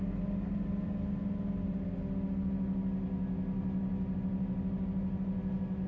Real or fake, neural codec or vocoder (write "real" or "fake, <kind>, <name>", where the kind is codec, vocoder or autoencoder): real